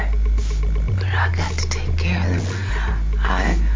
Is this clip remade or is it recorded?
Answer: recorded